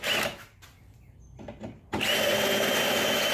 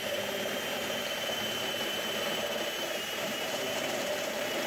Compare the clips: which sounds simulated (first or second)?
second